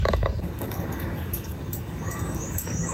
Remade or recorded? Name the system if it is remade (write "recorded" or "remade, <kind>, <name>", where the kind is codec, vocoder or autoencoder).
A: remade, codec, DAC